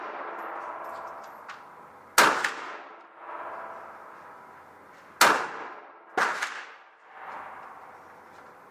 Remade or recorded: recorded